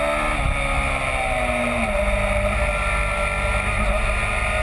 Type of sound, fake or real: real